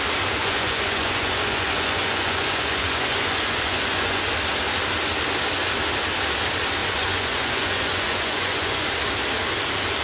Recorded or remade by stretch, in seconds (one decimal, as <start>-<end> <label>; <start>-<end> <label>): 0.0-0.4 recorded; 0.4-4.2 remade; 4.2-6.8 recorded; 6.8-8.9 remade; 8.9-10.0 recorded